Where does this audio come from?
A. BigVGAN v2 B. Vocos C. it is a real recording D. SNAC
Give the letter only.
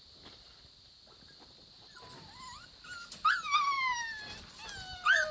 C